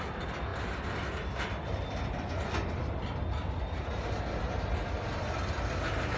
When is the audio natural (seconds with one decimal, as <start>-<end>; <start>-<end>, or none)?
0.0-6.2